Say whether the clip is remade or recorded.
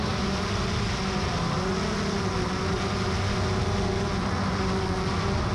recorded